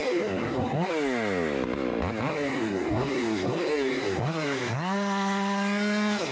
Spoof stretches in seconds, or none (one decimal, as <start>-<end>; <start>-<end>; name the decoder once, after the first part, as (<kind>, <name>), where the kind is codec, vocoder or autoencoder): 0.0-0.9 (codec, SNAC); 2.3-6.3